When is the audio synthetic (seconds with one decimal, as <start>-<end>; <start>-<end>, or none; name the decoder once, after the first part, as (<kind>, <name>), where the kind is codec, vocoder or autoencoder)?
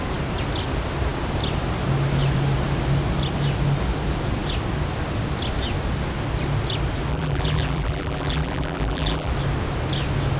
7.1-9.3 (vocoder, BigVGAN v2)